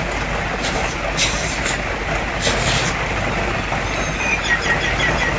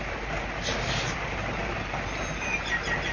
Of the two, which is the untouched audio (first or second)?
second